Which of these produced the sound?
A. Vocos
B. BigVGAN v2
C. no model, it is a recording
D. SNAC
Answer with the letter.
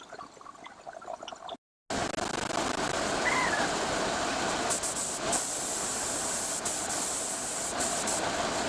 C